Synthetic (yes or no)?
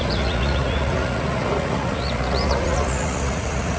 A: yes